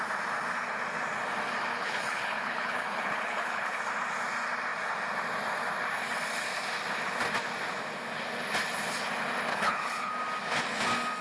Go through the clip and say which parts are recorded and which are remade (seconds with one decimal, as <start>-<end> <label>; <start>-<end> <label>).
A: 0.0-1.7 recorded; 1.7-3.8 remade; 3.8-9.5 recorded; 9.5-10.1 remade; 10.1-11.2 recorded